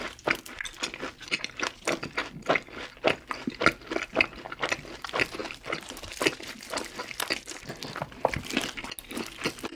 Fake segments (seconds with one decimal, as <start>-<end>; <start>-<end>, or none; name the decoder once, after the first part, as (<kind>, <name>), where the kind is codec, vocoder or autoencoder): 5.4-8.3 (vocoder, BigVGAN v2)